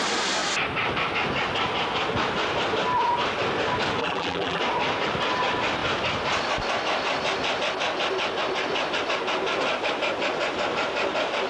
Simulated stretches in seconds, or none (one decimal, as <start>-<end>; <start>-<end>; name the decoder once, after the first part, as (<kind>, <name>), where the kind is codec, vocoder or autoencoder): 4.0-4.6 (vocoder, BigVGAN v2)